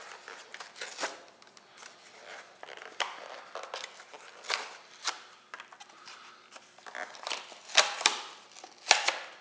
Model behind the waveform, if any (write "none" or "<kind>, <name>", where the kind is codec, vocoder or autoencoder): none